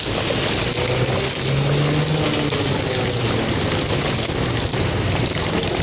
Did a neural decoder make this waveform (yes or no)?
no